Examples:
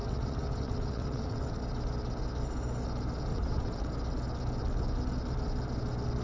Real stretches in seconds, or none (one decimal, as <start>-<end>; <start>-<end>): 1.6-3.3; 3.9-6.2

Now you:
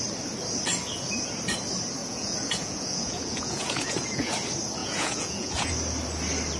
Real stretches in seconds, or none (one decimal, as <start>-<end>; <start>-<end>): 0.0-2.0; 4.3-4.8; 5.7-6.6

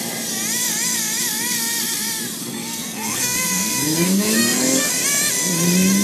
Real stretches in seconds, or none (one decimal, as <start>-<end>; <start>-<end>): 0.0-2.4; 4.9-6.0

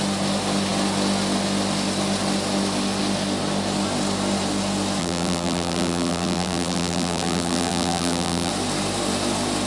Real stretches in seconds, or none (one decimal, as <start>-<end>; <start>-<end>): 0.0-5.0; 8.5-9.7

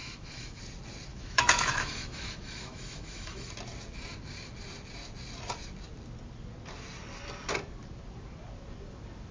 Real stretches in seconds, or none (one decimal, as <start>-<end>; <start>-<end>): 0.6-1.1; 3.5-9.3